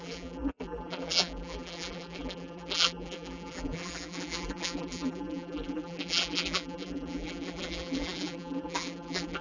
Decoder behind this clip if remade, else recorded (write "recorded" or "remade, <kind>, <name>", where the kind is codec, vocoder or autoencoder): remade, vocoder, BigVGAN v2